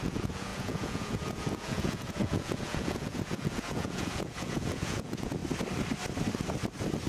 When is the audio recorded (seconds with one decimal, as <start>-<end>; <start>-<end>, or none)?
5.4-7.1